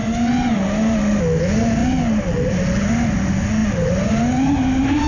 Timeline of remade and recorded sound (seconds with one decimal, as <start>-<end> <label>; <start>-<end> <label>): 0.0-5.1 recorded